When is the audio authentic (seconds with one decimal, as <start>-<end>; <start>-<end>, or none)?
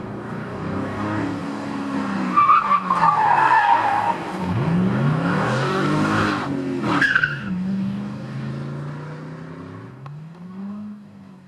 6.4-7.0; 8.5-9.9